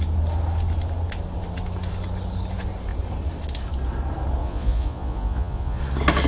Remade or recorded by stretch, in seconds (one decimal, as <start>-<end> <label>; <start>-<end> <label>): 0.0-4.4 recorded; 4.4-5.8 remade; 5.8-6.3 recorded